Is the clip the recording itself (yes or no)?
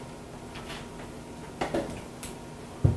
yes